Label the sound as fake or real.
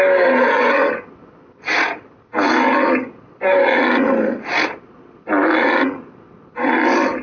real